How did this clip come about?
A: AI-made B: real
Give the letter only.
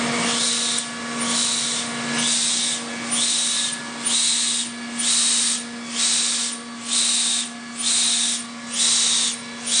B